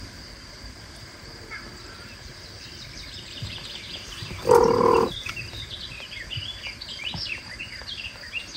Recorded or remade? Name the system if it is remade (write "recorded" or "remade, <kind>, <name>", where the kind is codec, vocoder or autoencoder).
remade, vocoder, BigVGAN v2